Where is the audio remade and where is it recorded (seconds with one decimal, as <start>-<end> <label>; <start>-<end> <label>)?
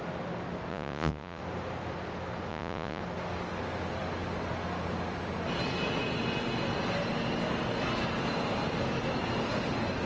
0.0-0.7 recorded; 0.7-1.4 remade; 1.4-2.5 recorded; 2.5-3.0 remade; 3.0-10.1 recorded